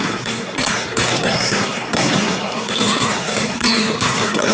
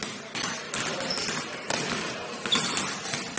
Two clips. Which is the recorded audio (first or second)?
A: second